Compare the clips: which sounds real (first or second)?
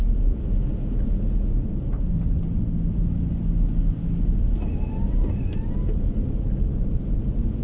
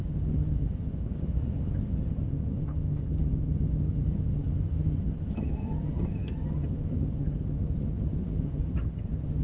first